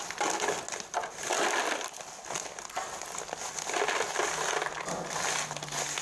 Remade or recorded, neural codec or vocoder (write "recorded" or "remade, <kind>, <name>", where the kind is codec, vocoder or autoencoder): recorded